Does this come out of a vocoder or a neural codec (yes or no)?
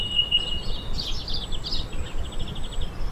no